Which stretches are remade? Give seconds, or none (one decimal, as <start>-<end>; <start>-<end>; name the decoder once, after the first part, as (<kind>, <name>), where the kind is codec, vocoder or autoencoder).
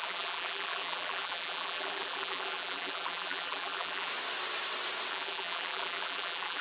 0.0-4.1 (vocoder, BigVGAN v2); 5.1-6.6